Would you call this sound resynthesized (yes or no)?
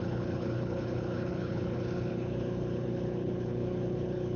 yes